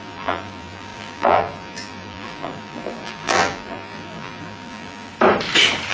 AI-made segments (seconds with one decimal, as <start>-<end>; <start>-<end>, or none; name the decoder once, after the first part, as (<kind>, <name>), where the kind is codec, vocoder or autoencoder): 0.0-5.1 (vocoder, BigVGAN v2)